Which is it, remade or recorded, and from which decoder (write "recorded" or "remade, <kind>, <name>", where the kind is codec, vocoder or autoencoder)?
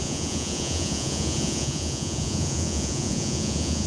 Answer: remade, vocoder, Vocos